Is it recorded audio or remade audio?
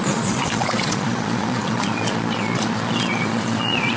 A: remade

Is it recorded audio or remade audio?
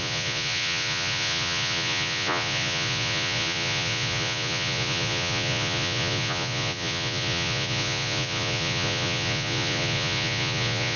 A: remade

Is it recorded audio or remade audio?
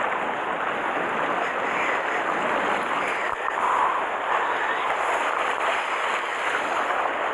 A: recorded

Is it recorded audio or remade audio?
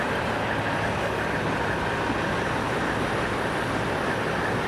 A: recorded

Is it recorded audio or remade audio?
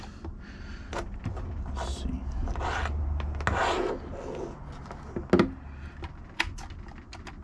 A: recorded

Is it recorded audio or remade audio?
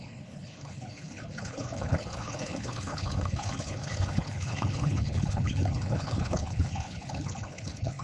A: remade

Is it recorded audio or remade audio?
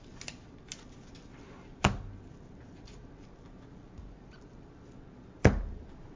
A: recorded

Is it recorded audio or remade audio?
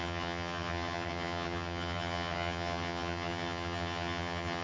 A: remade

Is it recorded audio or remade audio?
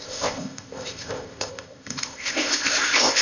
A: remade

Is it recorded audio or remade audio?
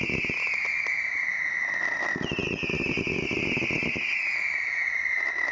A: recorded